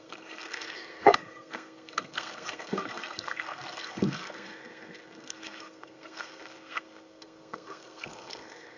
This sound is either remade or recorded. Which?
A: remade